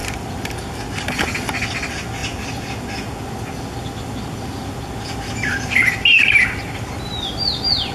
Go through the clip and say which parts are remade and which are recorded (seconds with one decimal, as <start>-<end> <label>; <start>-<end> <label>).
0.0-7.9 recorded